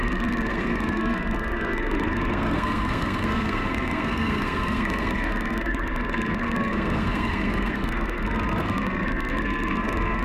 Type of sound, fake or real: fake